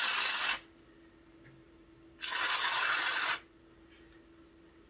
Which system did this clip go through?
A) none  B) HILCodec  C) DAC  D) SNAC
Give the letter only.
A